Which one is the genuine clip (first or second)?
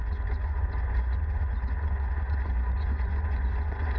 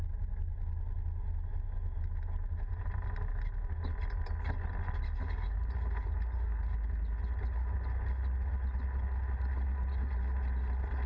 second